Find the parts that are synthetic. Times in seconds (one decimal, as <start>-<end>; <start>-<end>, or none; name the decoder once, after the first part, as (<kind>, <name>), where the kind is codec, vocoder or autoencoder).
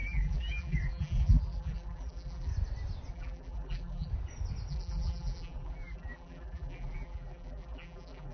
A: 0.0-2.5 (vocoder, BigVGAN v2); 3.1-4.1; 4.7-8.3